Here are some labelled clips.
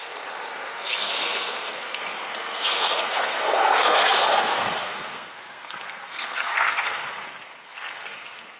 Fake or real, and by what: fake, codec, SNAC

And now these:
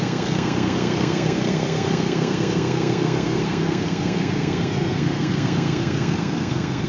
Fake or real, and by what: fake, codec, SNAC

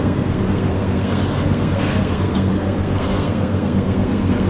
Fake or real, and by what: fake, codec, SNAC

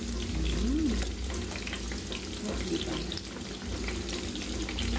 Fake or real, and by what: real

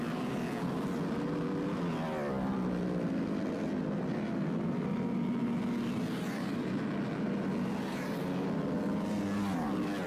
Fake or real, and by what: real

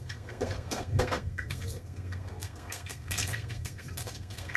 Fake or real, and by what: fake, codec, SNAC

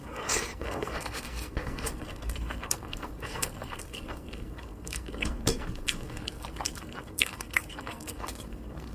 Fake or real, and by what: fake, codec, SNAC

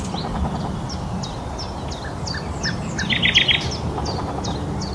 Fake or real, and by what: real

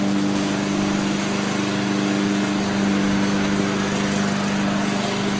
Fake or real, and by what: real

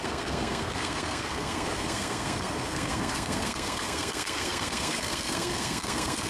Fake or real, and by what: fake, codec, SNAC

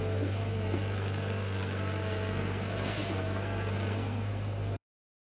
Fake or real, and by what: fake, codec, SNAC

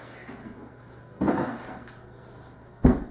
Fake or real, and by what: fake, codec, SNAC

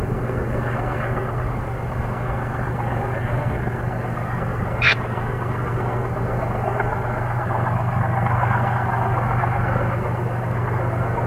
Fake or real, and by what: fake, codec, SNAC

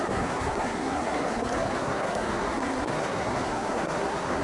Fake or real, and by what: fake, codec, SNAC